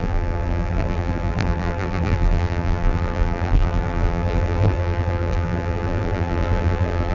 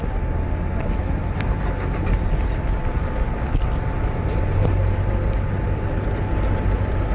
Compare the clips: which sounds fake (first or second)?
first